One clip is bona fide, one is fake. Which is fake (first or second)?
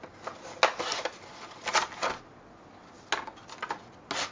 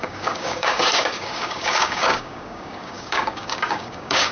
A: second